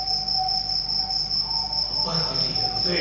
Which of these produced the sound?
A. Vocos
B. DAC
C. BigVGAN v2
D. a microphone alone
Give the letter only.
D